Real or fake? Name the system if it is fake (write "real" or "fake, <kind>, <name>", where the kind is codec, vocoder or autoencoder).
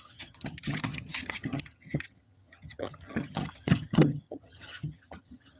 fake, vocoder, HiFi-GAN